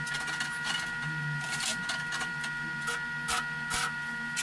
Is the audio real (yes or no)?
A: yes